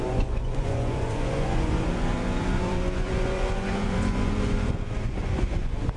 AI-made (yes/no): yes